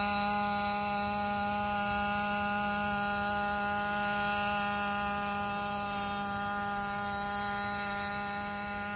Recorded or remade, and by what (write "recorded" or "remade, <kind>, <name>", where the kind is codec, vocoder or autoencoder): recorded